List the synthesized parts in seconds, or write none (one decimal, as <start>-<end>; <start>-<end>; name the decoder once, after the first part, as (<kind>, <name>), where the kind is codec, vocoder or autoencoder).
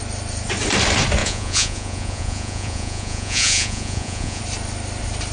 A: 1.2-4.4 (vocoder, Vocos)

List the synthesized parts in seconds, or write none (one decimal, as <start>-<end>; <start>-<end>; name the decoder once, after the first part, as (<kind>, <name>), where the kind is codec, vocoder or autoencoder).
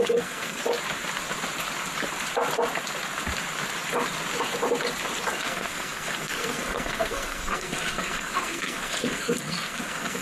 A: 0.0-0.6 (codec, SNAC); 5.3-10.2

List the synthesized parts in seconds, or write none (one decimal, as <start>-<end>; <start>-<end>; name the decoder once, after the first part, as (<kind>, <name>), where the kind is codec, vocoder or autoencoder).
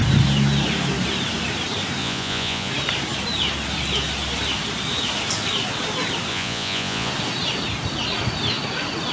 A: 2.0-2.7 (vocoder, Vocos); 6.3-7.1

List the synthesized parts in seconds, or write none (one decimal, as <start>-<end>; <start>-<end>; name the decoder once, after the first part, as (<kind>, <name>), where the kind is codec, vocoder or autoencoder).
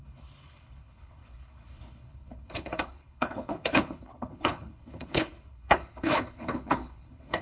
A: 0.0-7.4 (codec, HILCodec)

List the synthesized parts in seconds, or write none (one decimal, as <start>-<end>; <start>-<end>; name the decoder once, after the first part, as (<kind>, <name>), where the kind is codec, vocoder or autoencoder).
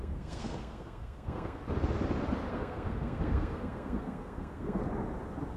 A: 0.0-1.6 (codec, SNAC); 2.5-4.8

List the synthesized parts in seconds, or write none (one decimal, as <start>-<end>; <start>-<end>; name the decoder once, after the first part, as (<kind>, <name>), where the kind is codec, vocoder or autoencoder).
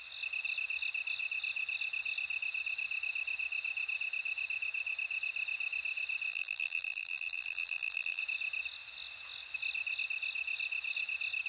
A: 6.3-8.2 (vocoder, BigVGAN v2)